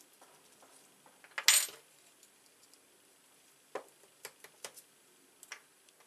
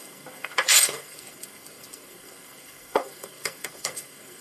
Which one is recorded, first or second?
first